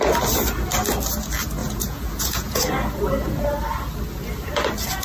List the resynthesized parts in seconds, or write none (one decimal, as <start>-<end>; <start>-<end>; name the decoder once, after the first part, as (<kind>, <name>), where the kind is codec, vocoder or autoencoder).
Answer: 1.6-2.6 (vocoder, Vocos)